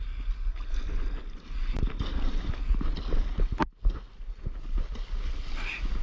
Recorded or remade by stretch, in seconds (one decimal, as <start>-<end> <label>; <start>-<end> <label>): 0.0-6.0 recorded